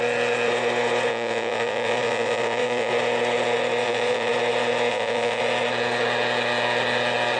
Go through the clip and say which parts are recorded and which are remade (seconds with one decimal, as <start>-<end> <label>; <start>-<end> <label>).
0.0-1.1 recorded; 1.1-2.9 remade; 2.9-3.8 recorded; 3.8-4.3 remade; 4.3-4.9 recorded; 4.9-5.4 remade; 5.4-7.4 recorded